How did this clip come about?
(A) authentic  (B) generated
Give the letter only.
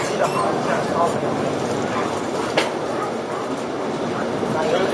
A